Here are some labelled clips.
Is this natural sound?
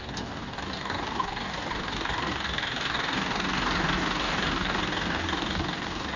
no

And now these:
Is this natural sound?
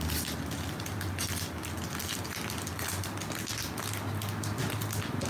yes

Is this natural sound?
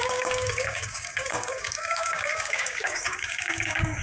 no